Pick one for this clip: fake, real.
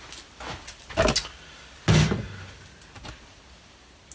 real